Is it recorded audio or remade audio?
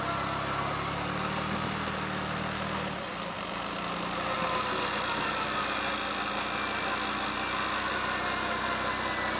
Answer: recorded